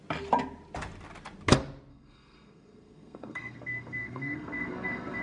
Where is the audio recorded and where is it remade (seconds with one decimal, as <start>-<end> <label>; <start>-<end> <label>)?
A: 0.0-1.9 recorded; 1.9-5.2 remade